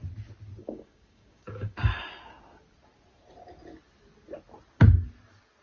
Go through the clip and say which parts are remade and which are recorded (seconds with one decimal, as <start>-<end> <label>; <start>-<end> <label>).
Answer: 0.0-0.6 recorded; 0.6-1.9 remade; 1.9-5.6 recorded